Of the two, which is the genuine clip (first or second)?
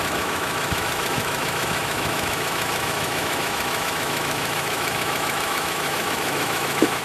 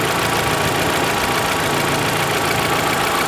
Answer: second